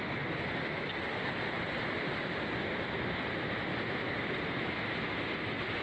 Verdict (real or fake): real